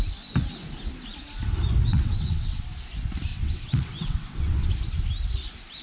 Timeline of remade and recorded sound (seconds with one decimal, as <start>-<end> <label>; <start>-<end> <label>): 0.0-1.9 recorded; 1.9-2.7 remade; 2.7-3.3 recorded; 3.3-4.7 remade; 4.7-5.8 recorded